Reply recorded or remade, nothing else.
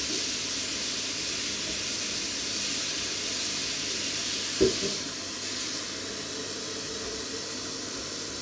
recorded